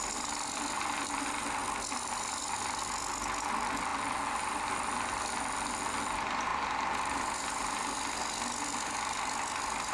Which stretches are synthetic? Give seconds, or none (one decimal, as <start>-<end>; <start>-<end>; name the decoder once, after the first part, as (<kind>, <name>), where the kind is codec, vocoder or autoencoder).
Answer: none

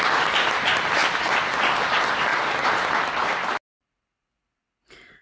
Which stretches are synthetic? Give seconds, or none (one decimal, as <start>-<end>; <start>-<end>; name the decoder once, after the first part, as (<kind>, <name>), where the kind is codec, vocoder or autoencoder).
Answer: 2.3-2.9 (vocoder, BigVGAN v2)

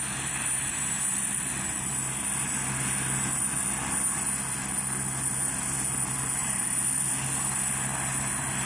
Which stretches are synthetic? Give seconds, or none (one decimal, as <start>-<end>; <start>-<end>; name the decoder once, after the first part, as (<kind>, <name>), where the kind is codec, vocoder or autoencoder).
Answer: 1.1-1.9 (vocoder, BigVGAN v2); 6.4-7.1

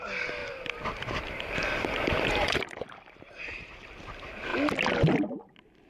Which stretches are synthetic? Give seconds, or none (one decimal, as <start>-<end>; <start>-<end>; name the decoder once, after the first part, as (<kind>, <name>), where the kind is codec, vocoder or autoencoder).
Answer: 0.4-3.9 (vocoder, BigVGAN v2)

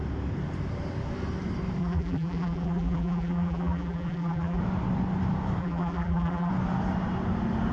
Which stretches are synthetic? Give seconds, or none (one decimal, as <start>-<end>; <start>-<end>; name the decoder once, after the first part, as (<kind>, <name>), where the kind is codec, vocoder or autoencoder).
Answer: 1.8-4.6 (vocoder, BigVGAN v2); 5.6-6.5

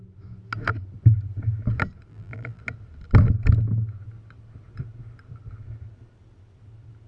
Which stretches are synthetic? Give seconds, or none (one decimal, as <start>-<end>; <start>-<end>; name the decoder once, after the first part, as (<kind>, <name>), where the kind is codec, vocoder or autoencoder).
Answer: 2.1-2.6 (vocoder, BigVGAN v2)